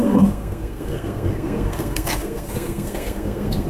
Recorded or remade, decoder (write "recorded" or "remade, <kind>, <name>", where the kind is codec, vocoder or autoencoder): remade, codec, SNAC